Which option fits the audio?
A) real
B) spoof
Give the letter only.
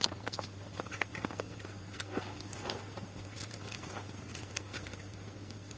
B